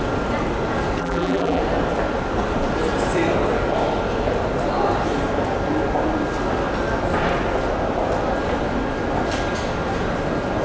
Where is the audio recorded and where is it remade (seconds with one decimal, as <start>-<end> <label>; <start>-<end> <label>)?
0.0-1.0 recorded; 1.0-1.6 remade; 1.6-10.6 recorded